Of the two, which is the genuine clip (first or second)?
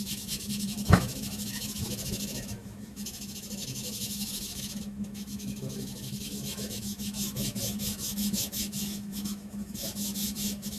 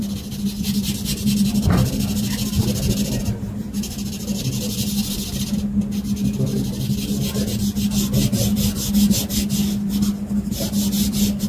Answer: second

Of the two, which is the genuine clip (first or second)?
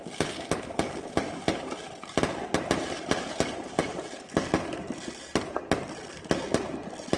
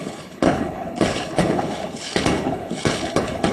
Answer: first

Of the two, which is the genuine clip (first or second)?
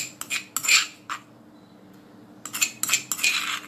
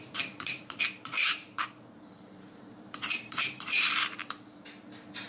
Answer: first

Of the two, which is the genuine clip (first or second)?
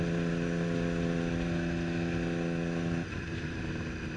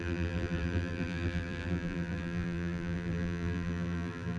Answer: first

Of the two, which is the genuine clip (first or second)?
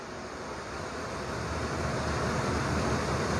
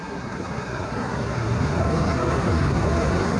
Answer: first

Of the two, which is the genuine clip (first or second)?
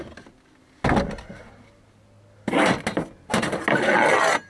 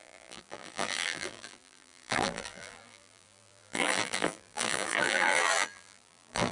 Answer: first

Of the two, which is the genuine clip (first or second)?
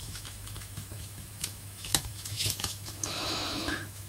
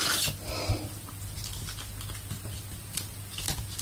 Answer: second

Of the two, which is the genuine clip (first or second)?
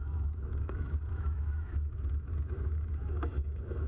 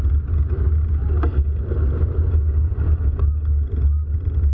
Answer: second